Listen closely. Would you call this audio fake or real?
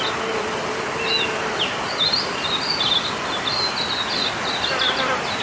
real